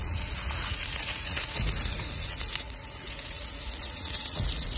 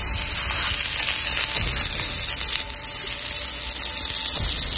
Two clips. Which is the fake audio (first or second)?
first